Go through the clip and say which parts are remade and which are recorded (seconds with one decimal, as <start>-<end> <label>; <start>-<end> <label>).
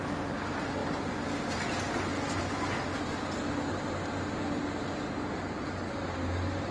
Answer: 0.0-6.7 recorded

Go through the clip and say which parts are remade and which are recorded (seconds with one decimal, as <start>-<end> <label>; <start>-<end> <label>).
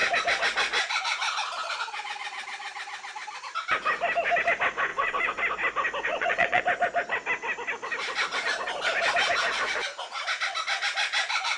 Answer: 0.0-4.9 recorded; 4.9-5.4 remade; 5.4-6.1 recorded; 6.1-6.6 remade; 6.6-11.6 recorded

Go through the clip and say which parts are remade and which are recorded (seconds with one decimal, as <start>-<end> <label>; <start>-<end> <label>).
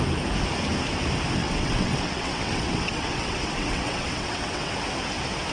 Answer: 0.0-1.4 recorded; 1.4-4.7 remade; 4.7-5.5 recorded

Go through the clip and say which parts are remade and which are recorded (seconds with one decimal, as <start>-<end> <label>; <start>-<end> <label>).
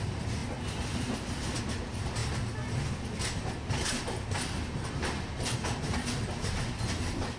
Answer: 0.0-7.4 recorded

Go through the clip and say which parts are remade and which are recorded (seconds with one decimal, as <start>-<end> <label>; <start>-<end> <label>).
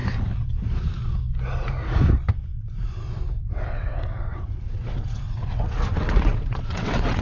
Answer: 0.0-3.5 recorded; 3.5-7.2 remade